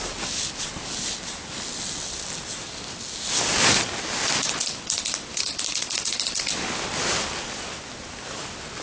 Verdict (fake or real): real